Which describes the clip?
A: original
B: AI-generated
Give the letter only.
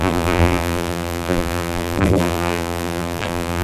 B